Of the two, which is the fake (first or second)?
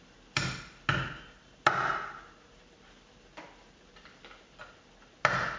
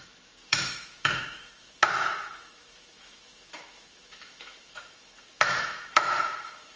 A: second